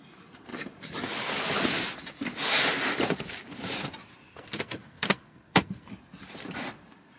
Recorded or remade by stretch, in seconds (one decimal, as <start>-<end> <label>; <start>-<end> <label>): 0.0-4.3 recorded; 4.3-5.9 remade; 5.9-7.2 recorded